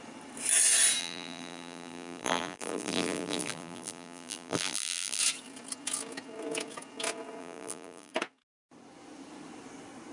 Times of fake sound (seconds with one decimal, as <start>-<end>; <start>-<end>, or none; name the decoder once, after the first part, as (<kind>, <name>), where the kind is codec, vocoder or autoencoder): 1.0-5.2 (vocoder, BigVGAN v2); 7.4-8.1